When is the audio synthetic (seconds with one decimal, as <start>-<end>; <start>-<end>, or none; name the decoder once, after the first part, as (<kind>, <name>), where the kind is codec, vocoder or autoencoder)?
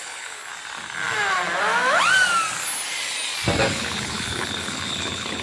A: 0.0-0.5 (codec, HILCodec); 3.7-5.4